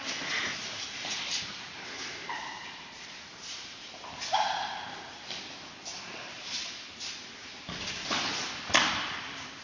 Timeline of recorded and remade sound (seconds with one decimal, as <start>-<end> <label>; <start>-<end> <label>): 0.0-0.5 recorded; 0.5-4.3 remade; 4.3-5.9 recorded; 5.9-6.8 remade; 6.8-8.0 recorded; 8.0-9.6 remade